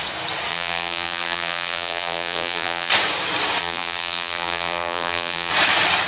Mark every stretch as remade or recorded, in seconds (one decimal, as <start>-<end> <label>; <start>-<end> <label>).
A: 0.0-0.5 recorded; 0.5-2.9 remade; 2.9-3.6 recorded; 3.6-5.5 remade; 5.5-6.1 recorded

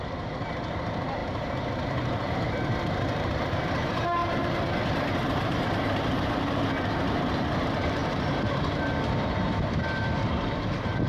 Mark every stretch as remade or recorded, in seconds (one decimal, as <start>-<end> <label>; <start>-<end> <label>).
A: 0.0-11.1 remade

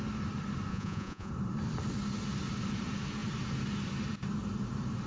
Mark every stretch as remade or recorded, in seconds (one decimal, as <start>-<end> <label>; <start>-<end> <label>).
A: 0.0-0.7 recorded; 0.7-1.3 remade; 1.3-5.1 recorded

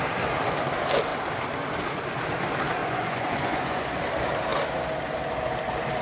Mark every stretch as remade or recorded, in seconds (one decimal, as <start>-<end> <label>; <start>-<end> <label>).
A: 0.0-2.8 recorded; 2.8-3.9 remade; 3.9-6.0 recorded

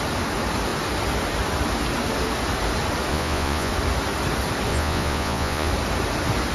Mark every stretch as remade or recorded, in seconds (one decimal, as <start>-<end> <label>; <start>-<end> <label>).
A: 0.0-3.1 recorded; 3.1-3.7 remade; 3.7-4.7 recorded; 4.7-5.7 remade; 5.7-6.5 recorded

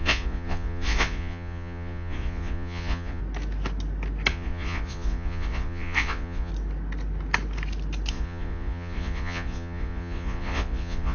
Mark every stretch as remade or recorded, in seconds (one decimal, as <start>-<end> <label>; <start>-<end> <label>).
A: 0.0-3.2 remade; 3.2-4.3 recorded; 4.3-6.5 remade; 6.5-8.1 recorded; 8.1-11.1 remade